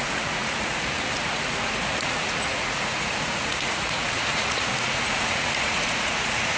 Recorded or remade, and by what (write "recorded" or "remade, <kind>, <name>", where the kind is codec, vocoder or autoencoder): remade, vocoder, Vocos